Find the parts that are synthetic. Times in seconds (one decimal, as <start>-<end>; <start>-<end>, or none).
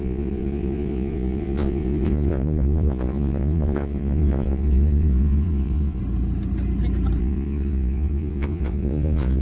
0.0-6.0; 7.2-9.4